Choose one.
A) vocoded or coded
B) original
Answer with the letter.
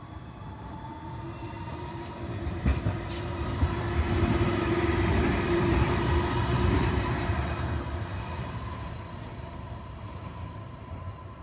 A